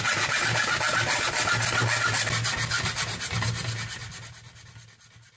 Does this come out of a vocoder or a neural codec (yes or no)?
no